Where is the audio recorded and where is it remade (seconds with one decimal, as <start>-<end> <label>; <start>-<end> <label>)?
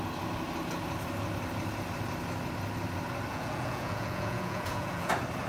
0.0-3.3 recorded; 3.3-5.1 remade; 5.1-5.5 recorded